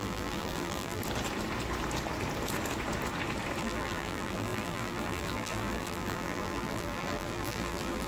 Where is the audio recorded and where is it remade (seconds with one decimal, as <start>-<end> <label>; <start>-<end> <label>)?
0.0-1.0 remade; 1.0-3.6 recorded; 3.6-8.1 remade